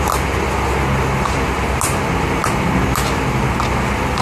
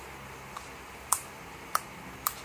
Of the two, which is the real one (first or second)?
first